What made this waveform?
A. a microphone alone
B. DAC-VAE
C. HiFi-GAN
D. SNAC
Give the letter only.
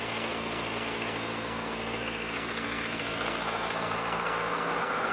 D